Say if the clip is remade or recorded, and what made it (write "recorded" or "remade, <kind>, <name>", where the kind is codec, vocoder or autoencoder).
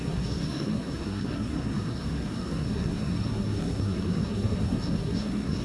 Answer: remade, codec, SNAC